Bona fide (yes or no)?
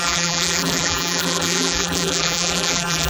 no